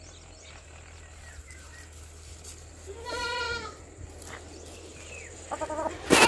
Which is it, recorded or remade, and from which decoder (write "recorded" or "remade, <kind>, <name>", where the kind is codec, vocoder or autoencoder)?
recorded